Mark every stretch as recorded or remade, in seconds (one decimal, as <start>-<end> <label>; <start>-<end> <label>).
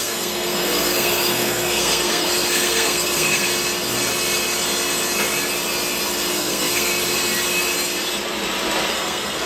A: 0.0-3.5 remade; 3.5-6.3 recorded; 6.3-6.9 remade; 6.9-8.9 recorded; 8.9-9.5 remade